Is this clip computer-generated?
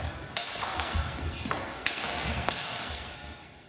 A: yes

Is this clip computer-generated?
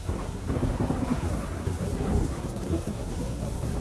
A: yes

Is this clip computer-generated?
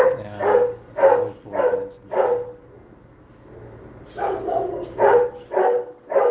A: no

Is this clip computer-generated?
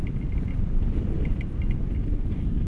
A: no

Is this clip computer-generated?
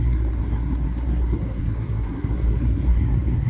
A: yes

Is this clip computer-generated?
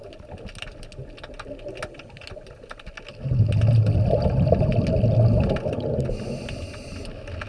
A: no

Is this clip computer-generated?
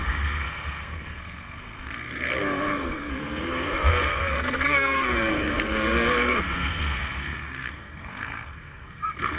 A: yes